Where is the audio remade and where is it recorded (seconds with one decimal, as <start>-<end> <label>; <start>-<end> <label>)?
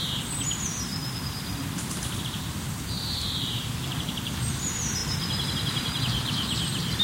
0.0-0.9 remade; 0.9-2.2 recorded; 2.2-7.0 remade